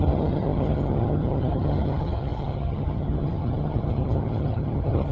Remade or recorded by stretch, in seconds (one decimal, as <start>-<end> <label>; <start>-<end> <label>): 0.0-5.1 remade